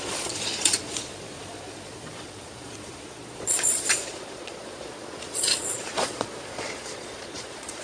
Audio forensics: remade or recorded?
remade